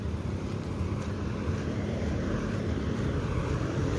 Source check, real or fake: fake